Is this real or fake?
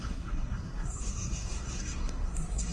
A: fake